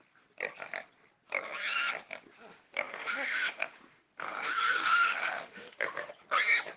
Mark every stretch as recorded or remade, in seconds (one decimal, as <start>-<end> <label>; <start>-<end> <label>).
0.0-2.5 recorded; 2.5-6.1 remade; 6.1-6.8 recorded